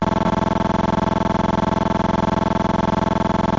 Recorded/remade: recorded